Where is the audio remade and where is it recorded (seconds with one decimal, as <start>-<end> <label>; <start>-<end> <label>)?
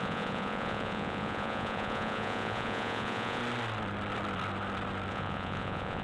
0.0-3.4 remade; 3.4-5.1 recorded; 5.1-6.0 remade